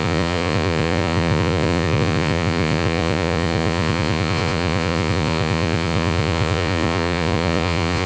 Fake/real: fake